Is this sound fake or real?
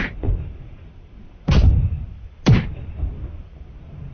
fake